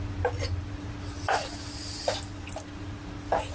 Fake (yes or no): no